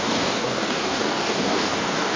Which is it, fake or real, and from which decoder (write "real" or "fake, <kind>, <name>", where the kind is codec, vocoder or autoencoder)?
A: fake, codec, DAC